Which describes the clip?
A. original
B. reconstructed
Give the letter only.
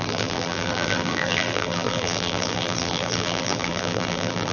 B